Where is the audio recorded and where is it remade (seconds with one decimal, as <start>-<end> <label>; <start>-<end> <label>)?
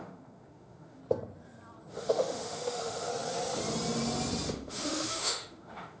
0.0-1.0 remade; 1.0-1.9 recorded; 1.9-3.1 remade; 3.1-4.5 recorded; 4.5-6.0 remade